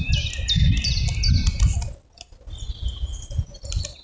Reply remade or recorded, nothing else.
recorded